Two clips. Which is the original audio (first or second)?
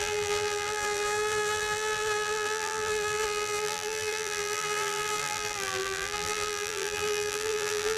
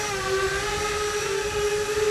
second